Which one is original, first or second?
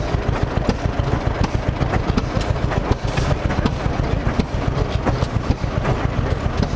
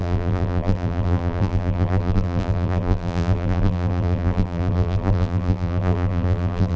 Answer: first